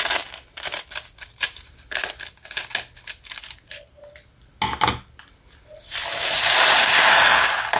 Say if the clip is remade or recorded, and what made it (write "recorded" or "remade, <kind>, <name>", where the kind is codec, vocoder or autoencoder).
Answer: recorded